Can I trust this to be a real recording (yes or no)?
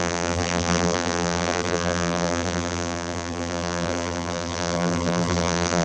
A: no